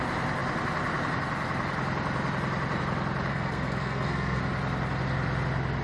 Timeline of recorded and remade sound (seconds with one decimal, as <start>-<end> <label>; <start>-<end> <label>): 0.0-3.3 recorded; 3.3-4.4 remade; 4.4-5.8 recorded